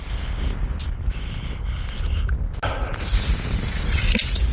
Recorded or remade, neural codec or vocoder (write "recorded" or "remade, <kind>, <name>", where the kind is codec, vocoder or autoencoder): recorded